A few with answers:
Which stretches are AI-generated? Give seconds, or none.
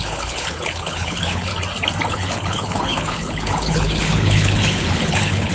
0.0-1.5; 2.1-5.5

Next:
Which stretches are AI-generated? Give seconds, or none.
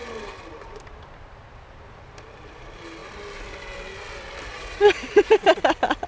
4.5-5.4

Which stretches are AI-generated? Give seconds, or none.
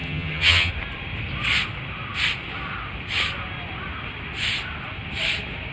0.0-0.7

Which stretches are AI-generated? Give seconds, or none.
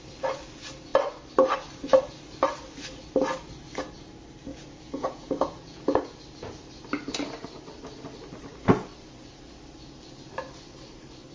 4.5-6.2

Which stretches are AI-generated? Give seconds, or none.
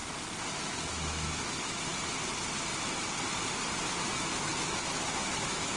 0.5-1.9; 4.0-5.8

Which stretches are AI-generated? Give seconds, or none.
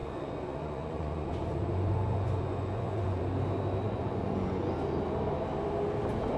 0.0-3.2; 3.8-4.7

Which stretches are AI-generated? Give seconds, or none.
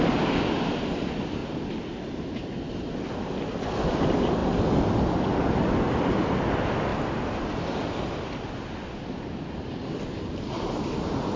none